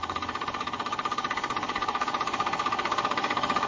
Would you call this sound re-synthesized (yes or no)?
yes